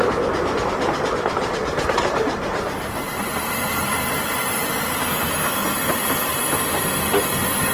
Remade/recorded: recorded